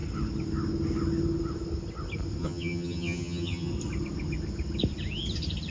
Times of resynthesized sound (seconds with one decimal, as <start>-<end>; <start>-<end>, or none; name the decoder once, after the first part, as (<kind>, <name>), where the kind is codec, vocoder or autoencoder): 2.4-3.7 (vocoder, HiFi-GAN)